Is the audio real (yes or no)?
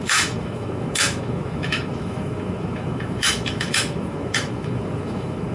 no